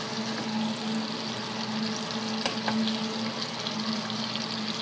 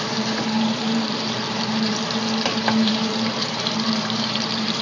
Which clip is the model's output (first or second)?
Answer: second